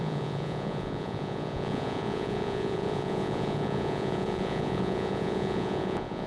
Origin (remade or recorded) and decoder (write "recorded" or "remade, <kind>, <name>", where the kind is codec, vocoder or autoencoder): remade, vocoder, Vocos